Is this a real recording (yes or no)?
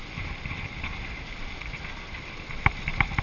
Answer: yes